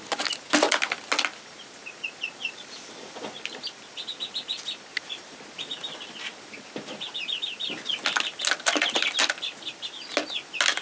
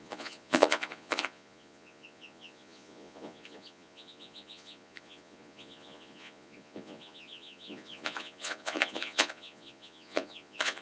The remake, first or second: second